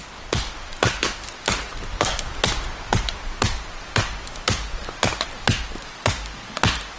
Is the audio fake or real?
real